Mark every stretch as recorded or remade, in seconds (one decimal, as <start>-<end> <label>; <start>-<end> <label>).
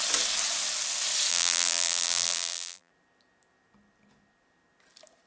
0.0-1.3 recorded; 1.3-2.9 remade; 2.9-5.3 recorded